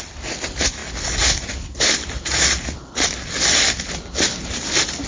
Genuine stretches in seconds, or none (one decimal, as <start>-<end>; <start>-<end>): 0.0-5.1